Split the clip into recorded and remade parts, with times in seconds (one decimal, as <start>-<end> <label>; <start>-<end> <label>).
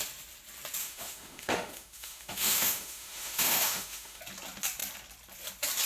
0.0-0.8 recorded; 0.8-4.2 remade; 4.2-5.9 recorded